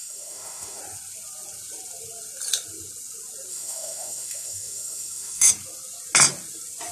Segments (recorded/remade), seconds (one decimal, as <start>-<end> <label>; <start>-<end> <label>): 0.0-0.8 remade; 0.8-3.5 recorded; 3.5-5.5 remade; 5.5-6.9 recorded